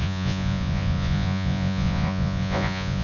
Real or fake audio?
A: fake